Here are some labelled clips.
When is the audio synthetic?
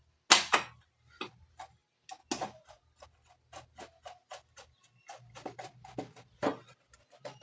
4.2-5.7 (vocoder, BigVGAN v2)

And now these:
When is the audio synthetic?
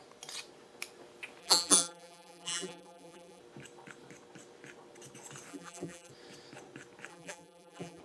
1.4-3.4 (vocoder, BigVGAN v2); 5.5-6.1; 7.1-8.0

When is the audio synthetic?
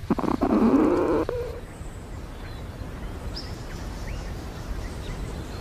0.0-5.6 (vocoder, BigVGAN v2)